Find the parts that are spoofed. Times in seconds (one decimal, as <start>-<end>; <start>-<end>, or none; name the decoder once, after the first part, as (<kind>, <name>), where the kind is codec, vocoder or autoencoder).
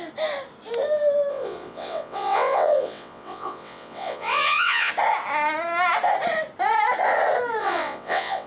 1.3-4.9 (vocoder, WaveNeXt); 7.6-8.5